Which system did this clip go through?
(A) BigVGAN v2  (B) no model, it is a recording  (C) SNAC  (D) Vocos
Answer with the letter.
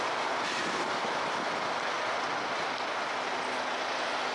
B